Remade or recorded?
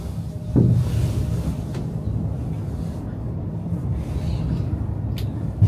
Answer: recorded